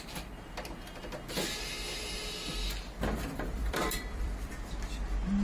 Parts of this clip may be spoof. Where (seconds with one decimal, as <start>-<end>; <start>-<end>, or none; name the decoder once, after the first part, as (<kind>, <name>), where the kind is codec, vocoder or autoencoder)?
3.6-4.5 (vocoder, BigVGAN v2)